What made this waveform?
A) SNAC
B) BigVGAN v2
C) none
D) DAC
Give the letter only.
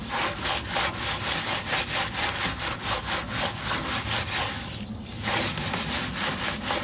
C